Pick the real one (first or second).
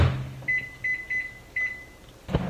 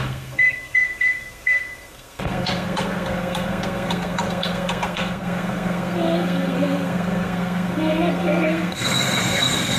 first